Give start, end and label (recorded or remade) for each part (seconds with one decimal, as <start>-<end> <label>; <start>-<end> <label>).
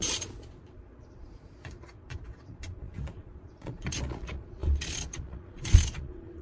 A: 0.0-6.4 remade